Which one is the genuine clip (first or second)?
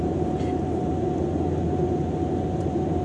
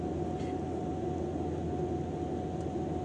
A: second